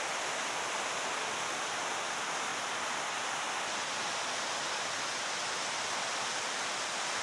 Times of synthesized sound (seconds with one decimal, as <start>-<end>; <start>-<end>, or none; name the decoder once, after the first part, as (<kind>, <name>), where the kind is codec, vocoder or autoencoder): none